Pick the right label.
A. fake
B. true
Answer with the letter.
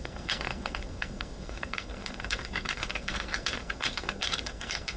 A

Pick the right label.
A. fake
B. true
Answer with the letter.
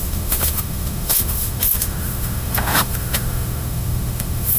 A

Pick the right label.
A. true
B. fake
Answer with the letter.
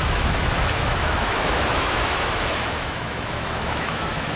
B